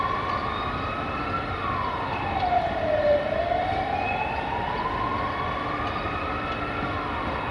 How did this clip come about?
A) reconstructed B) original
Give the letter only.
B